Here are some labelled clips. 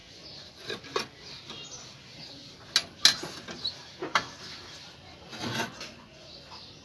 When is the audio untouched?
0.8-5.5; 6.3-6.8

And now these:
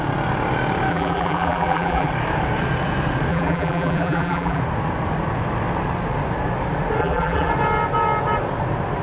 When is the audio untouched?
0.0-0.9; 2.1-3.3; 4.6-7.0; 7.5-9.0

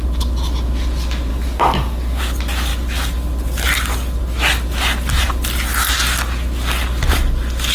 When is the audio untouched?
0.0-1.3; 2.2-7.7

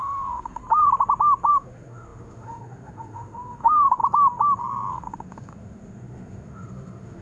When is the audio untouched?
0.6-1.5; 4.0-4.9

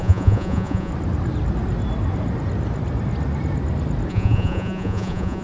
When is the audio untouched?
0.9-4.1

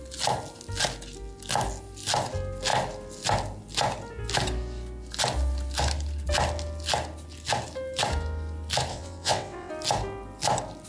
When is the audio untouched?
0.0-8.9; 9.7-10.9

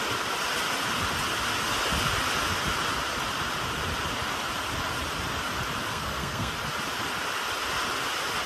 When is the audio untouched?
0.0-5.9; 6.5-8.5